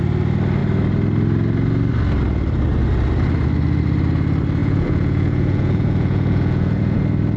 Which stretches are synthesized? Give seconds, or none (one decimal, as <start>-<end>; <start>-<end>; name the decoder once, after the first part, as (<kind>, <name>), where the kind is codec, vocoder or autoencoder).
4.6-7.0 (vocoder, Vocos)